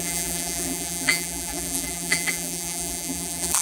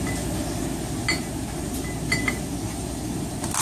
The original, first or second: second